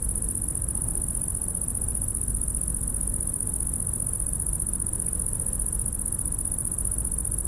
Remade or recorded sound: recorded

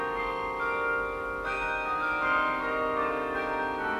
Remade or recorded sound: recorded